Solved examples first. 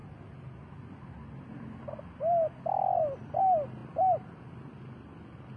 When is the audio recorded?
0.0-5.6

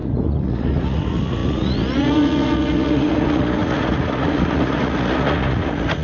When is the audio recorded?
none

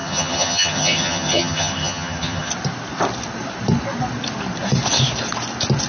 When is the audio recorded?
2.5-5.9

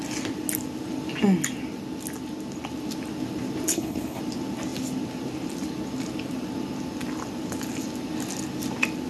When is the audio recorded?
0.0-3.7; 4.2-9.1

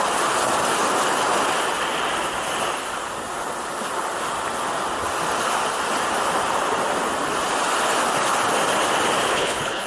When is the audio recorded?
0.0-9.3